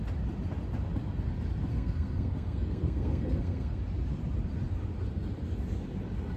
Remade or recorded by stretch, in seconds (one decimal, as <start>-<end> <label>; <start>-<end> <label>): 0.0-1.7 recorded; 1.7-3.8 remade; 3.8-6.4 recorded

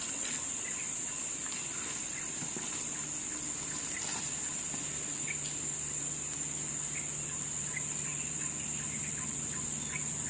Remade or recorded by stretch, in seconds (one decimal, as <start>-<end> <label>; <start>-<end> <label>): 0.0-10.3 recorded

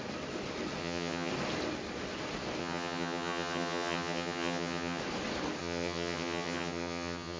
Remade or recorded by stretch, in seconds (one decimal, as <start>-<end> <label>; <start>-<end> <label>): 0.0-0.8 recorded; 0.8-1.3 remade; 1.3-2.6 recorded; 2.6-5.0 remade; 5.0-5.6 recorded; 5.6-7.4 remade

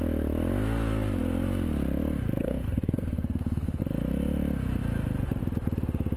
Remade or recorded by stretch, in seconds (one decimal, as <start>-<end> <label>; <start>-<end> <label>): 0.0-2.4 recorded; 2.4-3.8 remade; 3.8-6.2 recorded